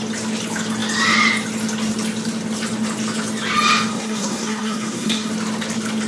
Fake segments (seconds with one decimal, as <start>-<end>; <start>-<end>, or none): 3.9-5.3